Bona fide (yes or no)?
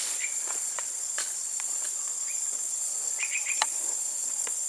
no